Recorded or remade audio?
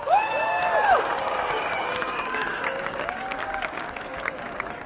remade